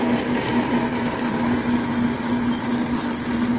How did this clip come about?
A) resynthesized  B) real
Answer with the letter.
B